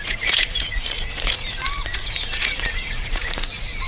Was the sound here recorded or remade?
remade